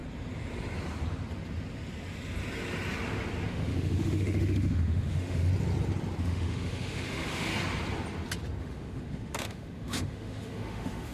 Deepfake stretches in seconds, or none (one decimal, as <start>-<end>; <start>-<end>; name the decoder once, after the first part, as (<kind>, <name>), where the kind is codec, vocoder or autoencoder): 3.5-5.5 (autoencoder, DAC-VAE); 6.2-7.5; 8.6-11.1